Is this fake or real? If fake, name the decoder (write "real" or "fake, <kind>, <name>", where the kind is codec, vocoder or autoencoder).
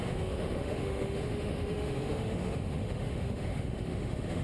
fake, autoencoder, DAC-VAE